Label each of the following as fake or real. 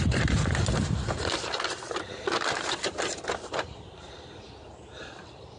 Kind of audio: fake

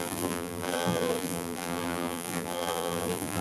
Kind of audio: fake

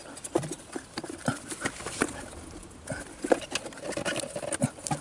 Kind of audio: fake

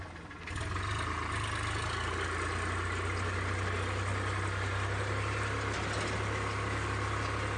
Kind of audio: real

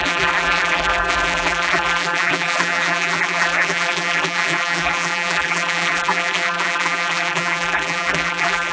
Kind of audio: fake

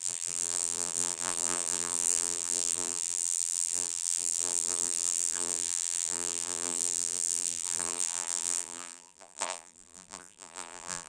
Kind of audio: fake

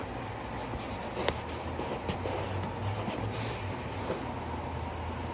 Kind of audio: real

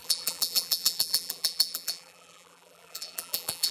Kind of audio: fake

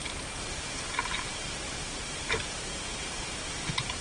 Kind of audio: fake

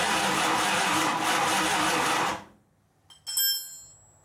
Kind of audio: real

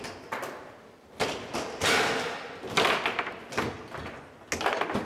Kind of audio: real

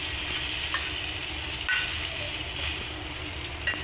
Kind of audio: real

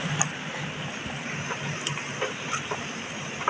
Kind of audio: real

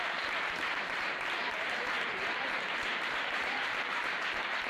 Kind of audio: fake